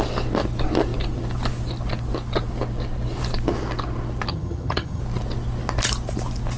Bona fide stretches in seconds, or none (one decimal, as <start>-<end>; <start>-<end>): 0.0-4.3; 5.0-6.6